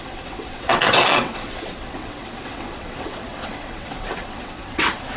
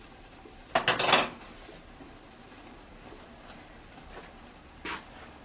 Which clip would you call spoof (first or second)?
first